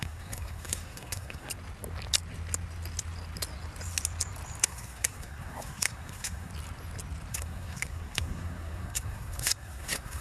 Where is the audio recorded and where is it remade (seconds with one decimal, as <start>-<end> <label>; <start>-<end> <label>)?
0.0-1.5 remade; 1.5-4.6 recorded; 4.6-6.5 remade; 6.5-7.3 recorded; 7.3-10.2 remade